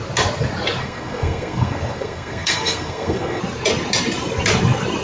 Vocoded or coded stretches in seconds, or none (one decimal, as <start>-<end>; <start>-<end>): 0.8-3.4